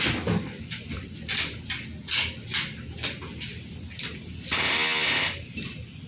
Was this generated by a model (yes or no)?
no